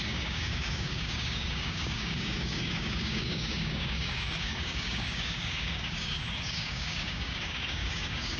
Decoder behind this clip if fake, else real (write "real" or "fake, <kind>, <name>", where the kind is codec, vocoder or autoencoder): fake, codec, DAC